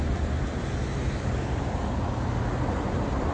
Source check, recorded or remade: recorded